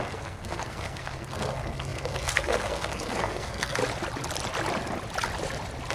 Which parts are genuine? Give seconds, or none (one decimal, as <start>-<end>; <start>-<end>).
3.8-5.9